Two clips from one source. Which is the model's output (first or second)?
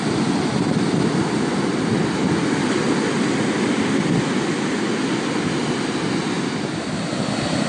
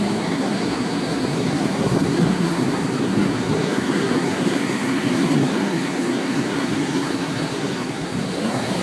second